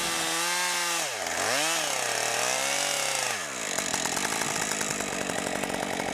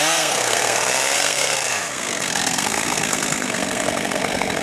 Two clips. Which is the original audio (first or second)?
first